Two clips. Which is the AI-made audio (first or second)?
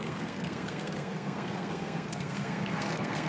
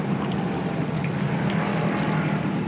first